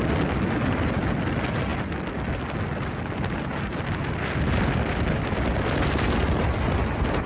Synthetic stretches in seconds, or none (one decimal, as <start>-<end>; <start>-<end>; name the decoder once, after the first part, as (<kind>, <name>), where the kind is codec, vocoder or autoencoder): none